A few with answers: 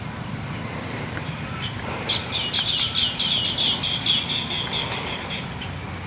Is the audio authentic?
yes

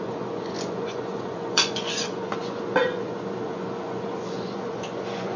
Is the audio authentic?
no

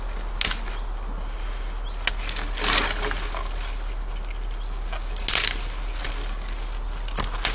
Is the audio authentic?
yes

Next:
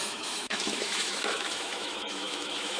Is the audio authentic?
no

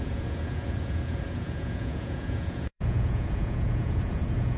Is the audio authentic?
no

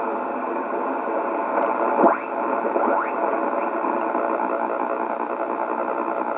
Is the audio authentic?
yes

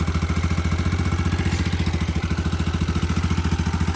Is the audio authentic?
yes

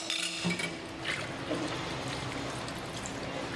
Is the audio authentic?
yes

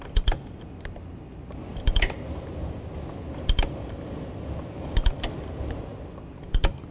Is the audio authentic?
yes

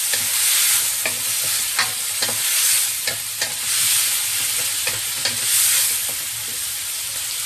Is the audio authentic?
yes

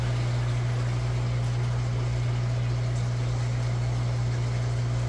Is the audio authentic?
yes